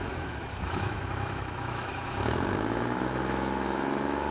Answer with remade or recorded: remade